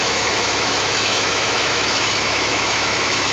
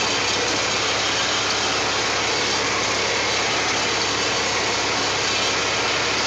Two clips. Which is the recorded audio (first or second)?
second